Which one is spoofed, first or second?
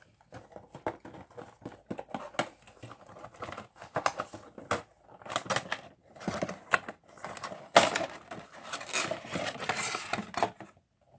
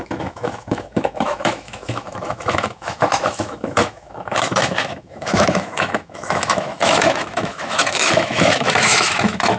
second